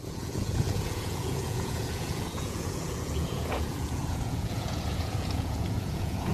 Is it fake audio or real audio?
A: fake